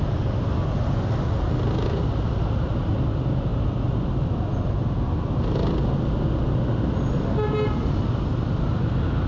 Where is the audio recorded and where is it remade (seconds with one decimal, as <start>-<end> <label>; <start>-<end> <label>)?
0.0-9.3 recorded